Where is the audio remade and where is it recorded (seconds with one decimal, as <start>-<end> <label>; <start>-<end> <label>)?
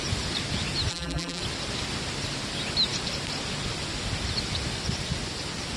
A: 0.0-0.9 recorded; 0.9-1.4 remade; 1.4-5.8 recorded